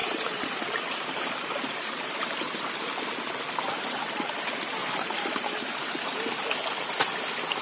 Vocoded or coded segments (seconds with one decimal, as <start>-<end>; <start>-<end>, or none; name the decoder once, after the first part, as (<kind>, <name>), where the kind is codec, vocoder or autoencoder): 0.0-2.7 (vocoder, BigVGAN v2); 4.8-6.3